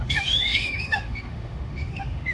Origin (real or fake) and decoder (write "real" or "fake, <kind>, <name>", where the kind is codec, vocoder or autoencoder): fake, autoencoder, DAC-VAE